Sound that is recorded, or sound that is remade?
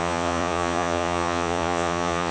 remade